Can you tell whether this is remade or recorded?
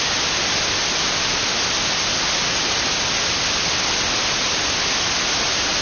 recorded